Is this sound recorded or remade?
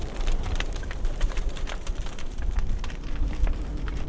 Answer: remade